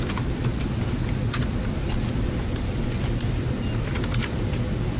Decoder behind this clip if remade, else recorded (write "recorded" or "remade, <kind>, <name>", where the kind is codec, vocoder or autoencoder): recorded